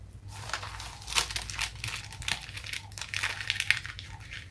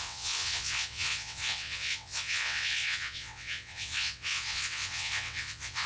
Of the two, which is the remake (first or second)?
second